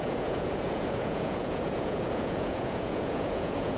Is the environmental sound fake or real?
fake